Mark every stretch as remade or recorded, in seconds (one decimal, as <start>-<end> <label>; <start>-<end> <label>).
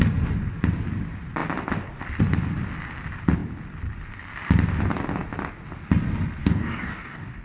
0.0-6.4 recorded; 6.4-7.4 remade